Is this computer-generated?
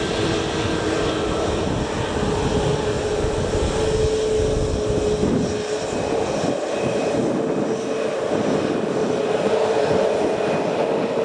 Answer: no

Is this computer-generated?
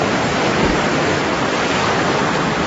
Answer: no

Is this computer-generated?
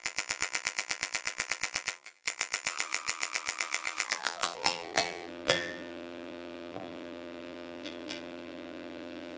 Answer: yes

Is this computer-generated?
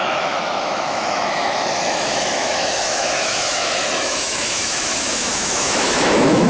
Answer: yes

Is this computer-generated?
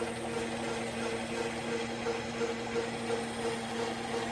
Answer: no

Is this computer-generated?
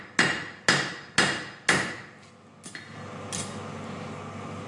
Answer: no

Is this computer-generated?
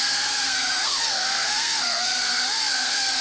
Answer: yes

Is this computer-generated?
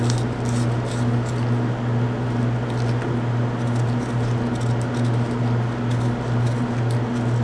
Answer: no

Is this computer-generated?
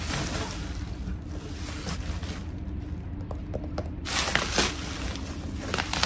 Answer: no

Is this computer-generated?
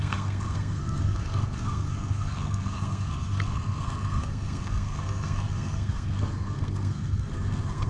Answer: yes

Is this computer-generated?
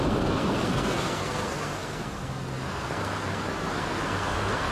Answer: yes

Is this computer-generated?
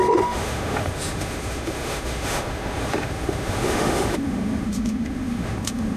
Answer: yes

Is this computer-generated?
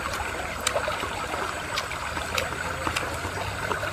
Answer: no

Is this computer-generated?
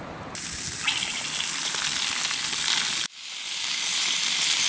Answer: no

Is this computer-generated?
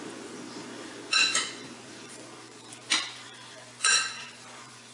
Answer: yes